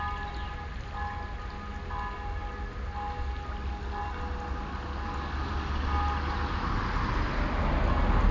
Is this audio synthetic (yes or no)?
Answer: no